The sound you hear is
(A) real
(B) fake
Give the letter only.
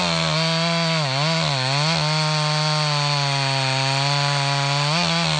A